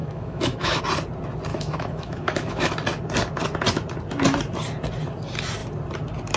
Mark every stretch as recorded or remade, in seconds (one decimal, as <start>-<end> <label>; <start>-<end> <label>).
0.0-0.8 remade; 0.8-1.5 recorded; 1.5-2.7 remade; 2.7-6.4 recorded